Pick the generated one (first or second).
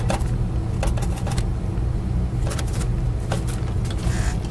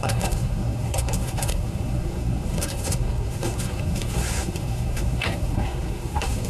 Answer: second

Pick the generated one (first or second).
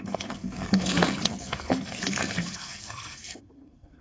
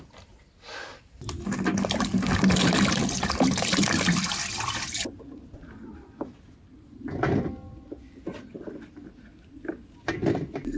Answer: first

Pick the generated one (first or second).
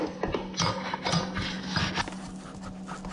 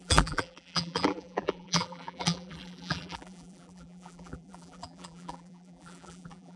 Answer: second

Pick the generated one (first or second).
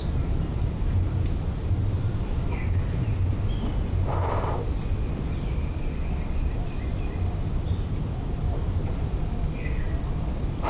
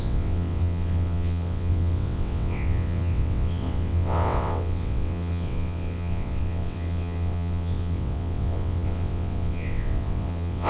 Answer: second